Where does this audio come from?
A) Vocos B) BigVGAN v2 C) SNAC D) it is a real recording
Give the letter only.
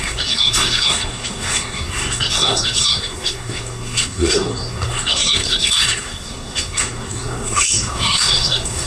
C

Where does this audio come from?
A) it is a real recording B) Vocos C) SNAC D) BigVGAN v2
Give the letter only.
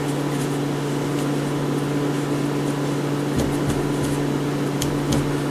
A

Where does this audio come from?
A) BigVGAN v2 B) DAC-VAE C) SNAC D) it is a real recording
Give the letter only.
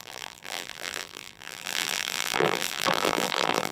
A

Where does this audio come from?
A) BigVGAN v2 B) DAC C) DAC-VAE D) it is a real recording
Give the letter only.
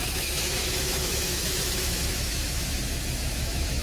C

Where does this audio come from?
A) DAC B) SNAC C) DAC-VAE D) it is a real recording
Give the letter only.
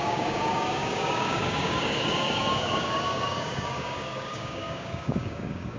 A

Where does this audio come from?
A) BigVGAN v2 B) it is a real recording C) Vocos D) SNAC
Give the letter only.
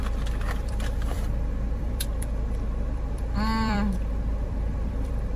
A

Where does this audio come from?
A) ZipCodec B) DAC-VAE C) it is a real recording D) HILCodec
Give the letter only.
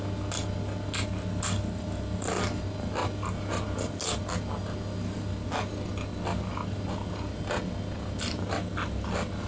C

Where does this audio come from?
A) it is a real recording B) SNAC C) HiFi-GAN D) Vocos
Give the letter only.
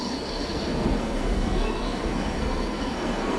B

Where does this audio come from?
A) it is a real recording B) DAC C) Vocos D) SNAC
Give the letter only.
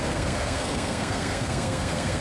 D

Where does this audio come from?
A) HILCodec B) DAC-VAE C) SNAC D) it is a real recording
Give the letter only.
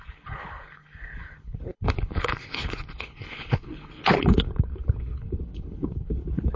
A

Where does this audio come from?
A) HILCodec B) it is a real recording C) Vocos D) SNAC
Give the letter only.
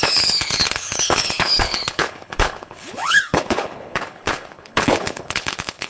A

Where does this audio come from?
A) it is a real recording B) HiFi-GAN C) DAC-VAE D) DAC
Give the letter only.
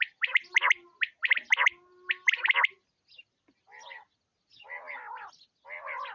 A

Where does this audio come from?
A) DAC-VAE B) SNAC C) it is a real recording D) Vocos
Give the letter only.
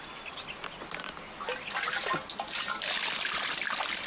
C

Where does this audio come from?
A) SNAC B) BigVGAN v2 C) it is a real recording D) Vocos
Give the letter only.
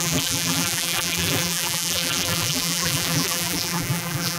B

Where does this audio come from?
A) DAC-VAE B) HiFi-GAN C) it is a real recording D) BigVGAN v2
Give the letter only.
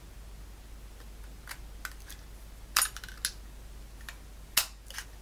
C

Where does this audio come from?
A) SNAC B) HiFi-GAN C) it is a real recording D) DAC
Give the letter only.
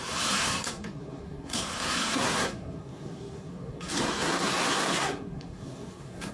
A